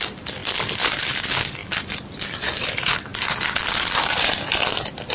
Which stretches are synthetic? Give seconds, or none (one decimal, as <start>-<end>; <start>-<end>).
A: none